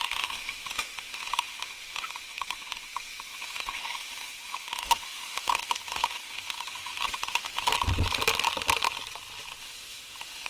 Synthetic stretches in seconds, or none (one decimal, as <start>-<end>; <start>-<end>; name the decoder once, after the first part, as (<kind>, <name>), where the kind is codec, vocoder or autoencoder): 0.0-7.7 (autoencoder, DAC-VAE); 9.6-10.5